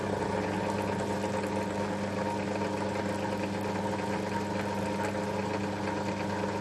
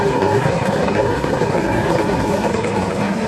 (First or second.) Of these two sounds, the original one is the first